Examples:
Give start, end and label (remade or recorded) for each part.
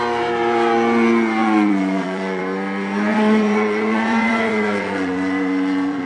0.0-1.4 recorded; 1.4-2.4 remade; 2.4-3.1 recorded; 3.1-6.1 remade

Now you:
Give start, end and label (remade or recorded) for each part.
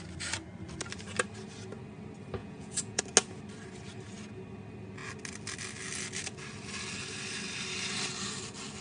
0.0-2.4 recorded; 2.4-3.0 remade; 3.0-8.8 recorded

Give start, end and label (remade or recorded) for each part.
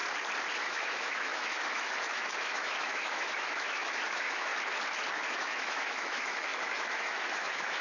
0.0-0.6 recorded; 0.6-4.5 remade; 4.5-5.3 recorded; 5.3-7.8 remade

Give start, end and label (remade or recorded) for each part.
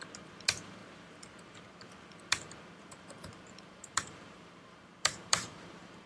0.0-6.1 remade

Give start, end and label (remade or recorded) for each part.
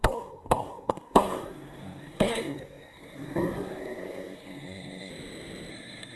0.0-5.1 remade; 5.1-5.7 recorded; 5.7-6.2 remade